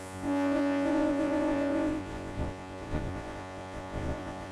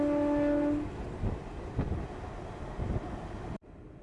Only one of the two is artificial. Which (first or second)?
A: first